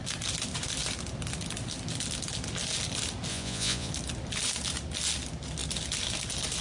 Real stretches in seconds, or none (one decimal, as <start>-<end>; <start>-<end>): 0.0-3.3; 3.9-6.6